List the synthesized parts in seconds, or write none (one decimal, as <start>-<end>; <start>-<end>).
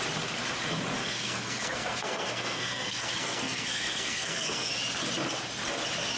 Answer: 1.0-4.7